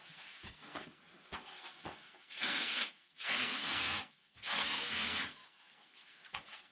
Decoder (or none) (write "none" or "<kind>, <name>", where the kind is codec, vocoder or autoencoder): codec, SNAC